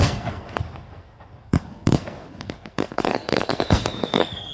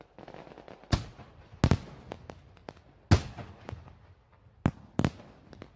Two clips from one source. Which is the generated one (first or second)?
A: first